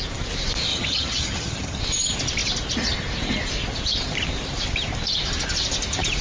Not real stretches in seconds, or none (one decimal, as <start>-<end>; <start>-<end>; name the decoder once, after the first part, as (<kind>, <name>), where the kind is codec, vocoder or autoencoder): 0.7-1.8 (vocoder, HiFi-GAN)